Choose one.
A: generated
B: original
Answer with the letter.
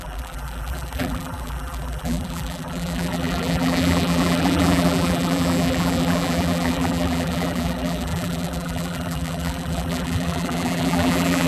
A